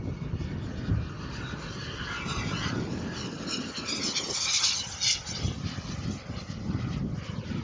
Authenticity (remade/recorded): recorded